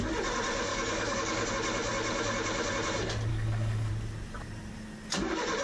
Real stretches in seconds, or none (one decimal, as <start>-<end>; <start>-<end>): 0.0-0.7; 1.5-3.3; 3.9-5.6